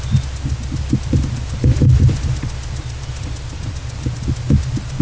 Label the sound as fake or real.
real